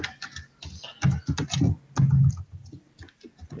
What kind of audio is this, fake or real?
real